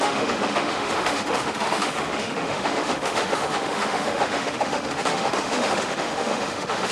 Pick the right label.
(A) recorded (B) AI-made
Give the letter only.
B